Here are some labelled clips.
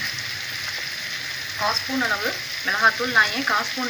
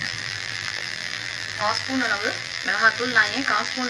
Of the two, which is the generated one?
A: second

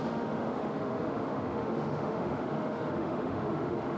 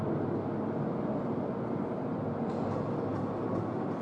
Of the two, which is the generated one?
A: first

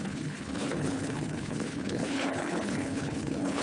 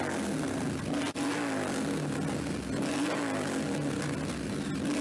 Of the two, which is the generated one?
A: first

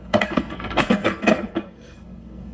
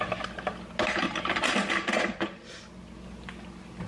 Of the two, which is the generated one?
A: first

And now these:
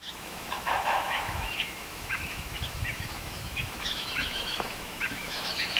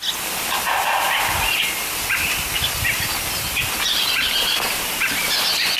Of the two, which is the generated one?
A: first